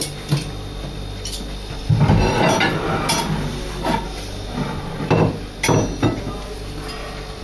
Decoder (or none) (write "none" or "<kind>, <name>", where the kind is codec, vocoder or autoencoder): none